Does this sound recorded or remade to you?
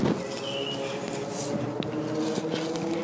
recorded